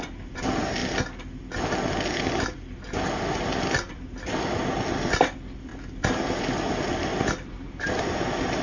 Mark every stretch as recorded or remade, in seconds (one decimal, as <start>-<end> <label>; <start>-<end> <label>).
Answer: 0.0-0.8 remade; 0.8-3.6 recorded; 3.6-8.6 remade